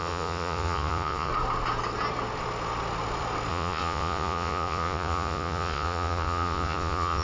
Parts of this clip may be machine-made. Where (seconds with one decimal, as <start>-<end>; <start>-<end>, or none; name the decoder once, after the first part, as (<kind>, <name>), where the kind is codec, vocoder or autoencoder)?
0.0-1.3 (vocoder, Vocos); 3.5-7.2